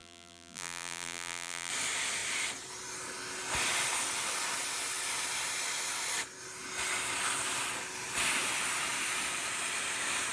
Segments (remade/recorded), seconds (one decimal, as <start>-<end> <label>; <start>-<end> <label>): 0.0-1.7 remade; 1.7-10.3 recorded